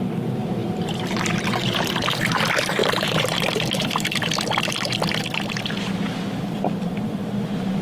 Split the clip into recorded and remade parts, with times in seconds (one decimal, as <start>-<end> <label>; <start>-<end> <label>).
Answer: 0.0-2.8 recorded; 2.8-3.5 remade; 3.5-7.8 recorded